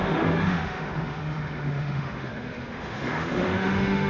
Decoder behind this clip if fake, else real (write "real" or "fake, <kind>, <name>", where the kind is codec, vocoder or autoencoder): fake, autoencoder, DAC-VAE